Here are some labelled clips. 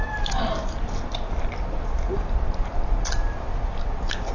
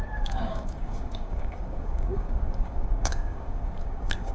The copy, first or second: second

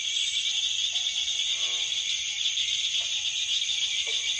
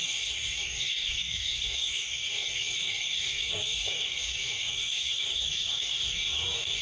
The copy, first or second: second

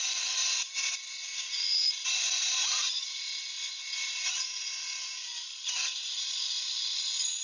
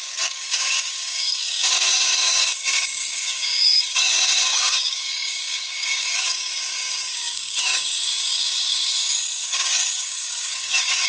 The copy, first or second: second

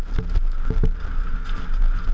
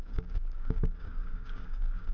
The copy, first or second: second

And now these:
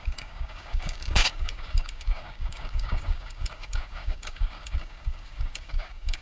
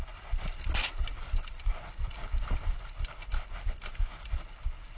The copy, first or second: first